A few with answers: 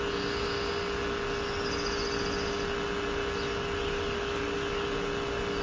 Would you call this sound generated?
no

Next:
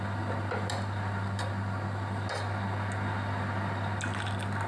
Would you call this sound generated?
no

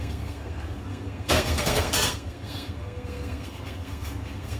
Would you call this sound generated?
yes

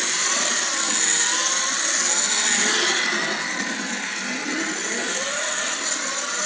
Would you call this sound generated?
no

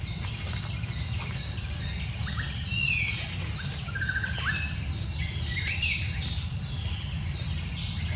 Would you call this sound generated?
no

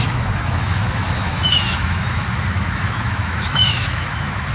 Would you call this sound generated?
yes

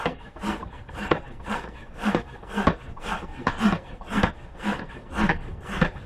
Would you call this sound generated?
yes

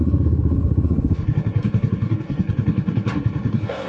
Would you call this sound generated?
yes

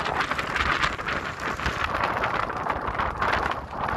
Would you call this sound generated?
no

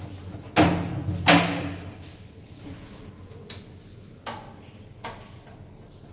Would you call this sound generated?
no